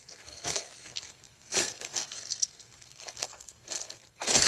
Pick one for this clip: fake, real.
fake